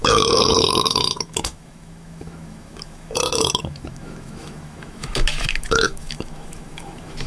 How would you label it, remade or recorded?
remade